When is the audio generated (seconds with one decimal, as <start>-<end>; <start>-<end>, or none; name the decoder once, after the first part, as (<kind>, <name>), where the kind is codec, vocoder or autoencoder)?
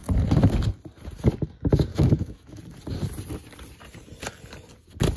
1.9-2.6 (autoencoder, DAC-VAE)